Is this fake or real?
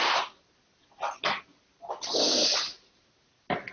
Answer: real